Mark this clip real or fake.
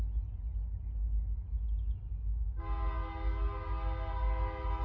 real